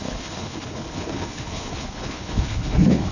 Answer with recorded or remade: remade